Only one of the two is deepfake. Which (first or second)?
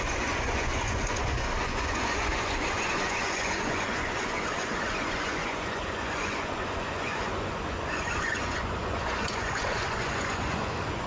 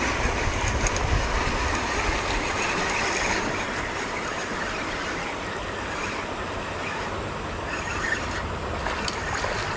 first